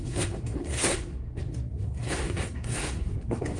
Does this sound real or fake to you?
fake